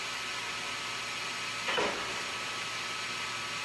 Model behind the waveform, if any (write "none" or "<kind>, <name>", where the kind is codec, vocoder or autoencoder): none